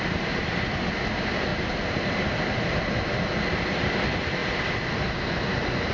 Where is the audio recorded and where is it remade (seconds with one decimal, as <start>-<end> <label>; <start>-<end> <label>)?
0.0-1.5 recorded; 1.5-2.4 remade; 2.4-5.9 recorded